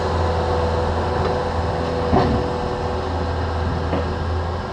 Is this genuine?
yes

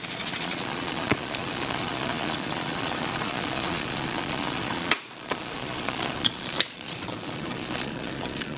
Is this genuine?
no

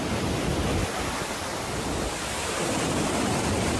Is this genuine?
yes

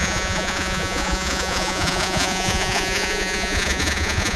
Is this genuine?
no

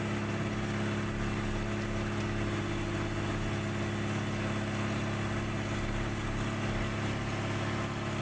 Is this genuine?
yes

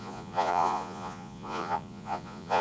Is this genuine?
no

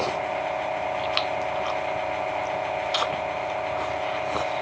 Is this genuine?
yes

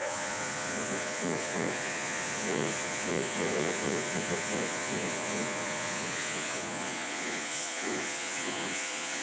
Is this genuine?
no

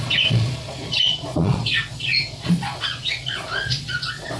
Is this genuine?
no